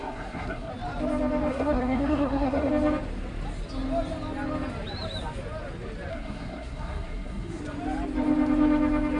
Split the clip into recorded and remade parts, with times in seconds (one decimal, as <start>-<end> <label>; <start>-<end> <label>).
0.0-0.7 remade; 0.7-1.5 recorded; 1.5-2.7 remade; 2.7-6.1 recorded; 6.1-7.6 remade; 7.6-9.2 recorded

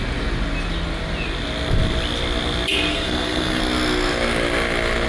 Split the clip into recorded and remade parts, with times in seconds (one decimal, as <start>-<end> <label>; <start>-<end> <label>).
0.0-2.9 recorded; 2.9-3.6 remade; 3.6-5.1 recorded

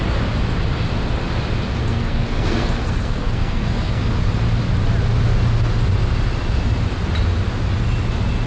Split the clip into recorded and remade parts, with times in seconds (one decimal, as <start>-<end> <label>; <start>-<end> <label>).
0.0-1.8 recorded; 1.8-4.1 remade; 4.1-8.5 recorded

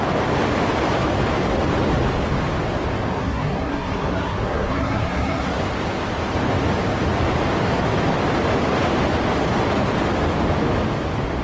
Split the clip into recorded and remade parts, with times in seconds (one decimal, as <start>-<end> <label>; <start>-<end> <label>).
0.0-3.1 recorded; 3.1-5.6 remade; 5.6-11.4 recorded

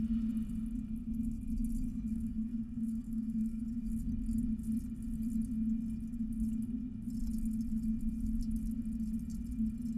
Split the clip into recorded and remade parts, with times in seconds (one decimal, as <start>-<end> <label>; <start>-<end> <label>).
0.0-2.1 recorded; 2.1-3.6 remade; 3.6-10.0 recorded

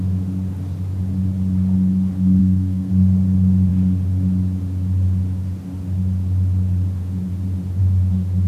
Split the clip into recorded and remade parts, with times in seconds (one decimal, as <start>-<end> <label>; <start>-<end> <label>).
0.0-2.4 recorded; 2.4-2.9 remade; 2.9-8.5 recorded

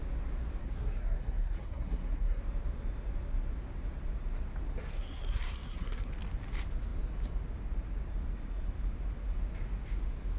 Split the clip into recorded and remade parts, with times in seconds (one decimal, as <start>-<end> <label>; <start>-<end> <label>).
0.0-0.6 recorded; 0.6-2.4 remade; 2.4-4.9 recorded; 4.9-6.1 remade; 6.1-10.4 recorded